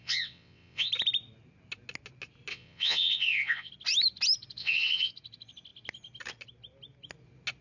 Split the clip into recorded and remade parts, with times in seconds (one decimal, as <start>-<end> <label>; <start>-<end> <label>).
0.0-0.9 remade; 0.9-2.5 recorded; 2.5-3.7 remade; 3.7-4.6 recorded; 4.6-5.1 remade; 5.1-7.6 recorded